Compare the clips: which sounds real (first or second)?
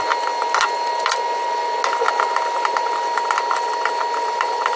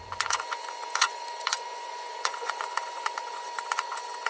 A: first